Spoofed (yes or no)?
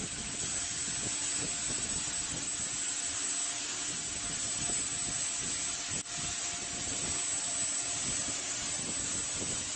no